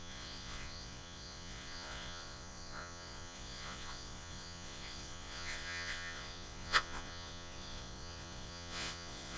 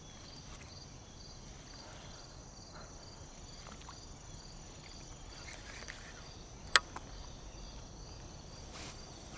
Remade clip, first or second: first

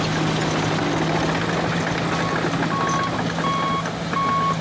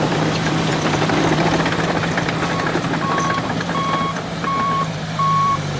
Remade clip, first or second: second